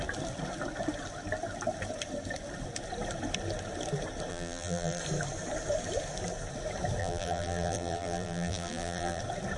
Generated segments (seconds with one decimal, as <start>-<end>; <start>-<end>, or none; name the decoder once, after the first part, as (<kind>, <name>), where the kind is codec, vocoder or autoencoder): 4.3-5.0 (vocoder, BigVGAN v2); 7.0-9.2